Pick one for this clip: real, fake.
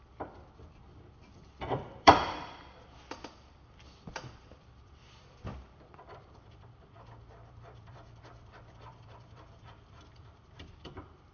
fake